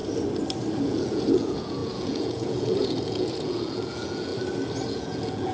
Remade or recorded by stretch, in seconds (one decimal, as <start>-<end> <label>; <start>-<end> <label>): 0.0-0.8 recorded; 0.8-4.3 remade; 4.3-4.9 recorded; 4.9-5.5 remade

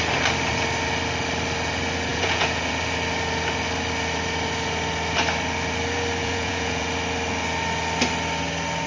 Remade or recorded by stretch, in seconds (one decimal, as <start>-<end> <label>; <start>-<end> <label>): 0.0-2.1 recorded; 2.1-2.7 remade; 2.7-6.2 recorded; 6.2-6.9 remade; 6.9-8.9 recorded